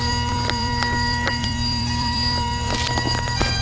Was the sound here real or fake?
fake